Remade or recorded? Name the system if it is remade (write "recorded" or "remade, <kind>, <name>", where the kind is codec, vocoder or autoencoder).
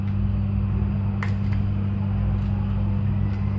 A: recorded